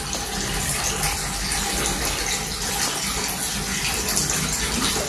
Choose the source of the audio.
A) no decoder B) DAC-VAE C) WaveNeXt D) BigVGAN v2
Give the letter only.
A